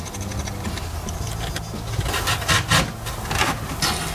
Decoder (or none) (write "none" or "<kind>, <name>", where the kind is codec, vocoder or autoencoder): none